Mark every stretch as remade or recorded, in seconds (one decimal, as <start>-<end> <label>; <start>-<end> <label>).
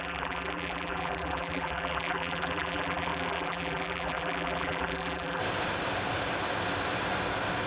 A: 0.0-5.4 remade; 5.4-7.7 recorded